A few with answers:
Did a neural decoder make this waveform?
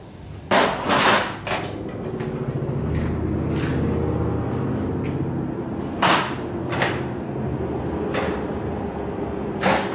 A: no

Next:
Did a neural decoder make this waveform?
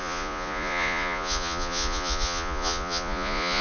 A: yes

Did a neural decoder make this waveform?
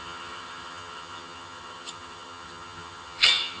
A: yes